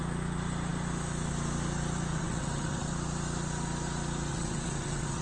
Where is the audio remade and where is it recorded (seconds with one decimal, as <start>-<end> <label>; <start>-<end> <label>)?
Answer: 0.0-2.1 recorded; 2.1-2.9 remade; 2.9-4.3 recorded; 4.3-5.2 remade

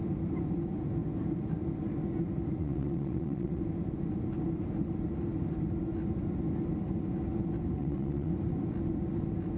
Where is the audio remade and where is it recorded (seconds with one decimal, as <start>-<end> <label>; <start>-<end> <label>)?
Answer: 0.0-2.6 recorded; 2.6-3.6 remade; 3.6-7.8 recorded; 7.8-8.3 remade; 8.3-9.6 recorded

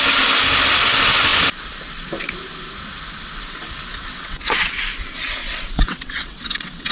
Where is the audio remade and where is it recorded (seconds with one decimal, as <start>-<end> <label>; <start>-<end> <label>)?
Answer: 0.0-3.9 recorded; 3.9-4.8 remade; 4.8-5.4 recorded; 5.4-6.9 remade

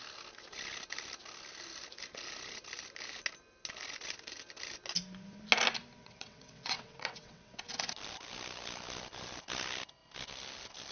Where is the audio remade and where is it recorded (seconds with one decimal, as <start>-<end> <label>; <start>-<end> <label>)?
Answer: 0.0-6.0 recorded; 6.0-7.6 remade; 7.6-10.9 recorded

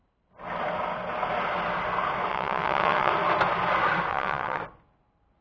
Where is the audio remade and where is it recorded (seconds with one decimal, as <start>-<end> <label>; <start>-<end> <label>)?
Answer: 0.0-2.3 recorded; 2.3-3.1 remade; 3.1-4.1 recorded; 4.1-4.6 remade; 4.6-5.4 recorded